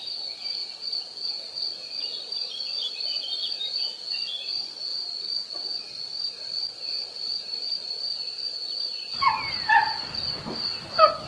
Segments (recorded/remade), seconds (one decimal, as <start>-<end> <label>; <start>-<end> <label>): 0.0-11.3 recorded